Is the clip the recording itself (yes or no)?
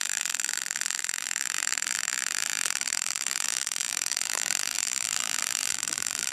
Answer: no